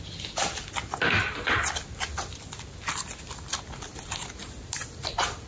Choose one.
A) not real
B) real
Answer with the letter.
B